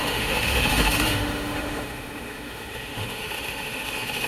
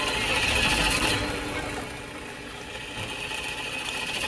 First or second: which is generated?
first